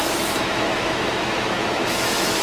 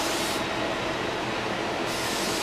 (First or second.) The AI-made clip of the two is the first